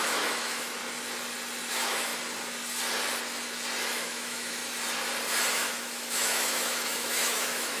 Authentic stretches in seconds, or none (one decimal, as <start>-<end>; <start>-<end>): 0.8-1.7; 2.1-3.8; 4.6-5.5